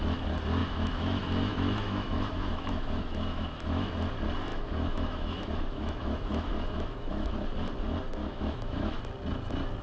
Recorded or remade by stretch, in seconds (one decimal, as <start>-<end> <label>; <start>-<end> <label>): 0.0-0.6 recorded; 0.6-3.9 remade; 3.9-4.5 recorded; 4.5-7.3 remade; 7.3-8.2 recorded; 8.2-9.0 remade; 9.0-9.8 recorded